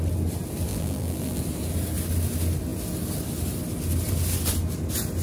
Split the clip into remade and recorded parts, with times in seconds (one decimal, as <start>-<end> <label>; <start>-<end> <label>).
0.0-0.7 recorded; 0.7-1.4 remade; 1.4-5.2 recorded